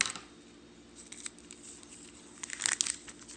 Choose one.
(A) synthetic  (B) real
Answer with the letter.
B